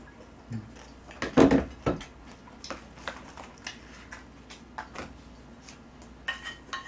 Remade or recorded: recorded